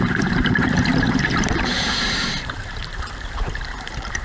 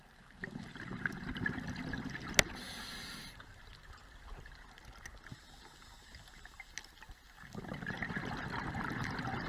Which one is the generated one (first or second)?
first